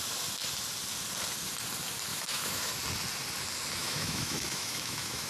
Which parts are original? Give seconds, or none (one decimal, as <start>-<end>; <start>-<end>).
0.0-2.1; 2.7-3.8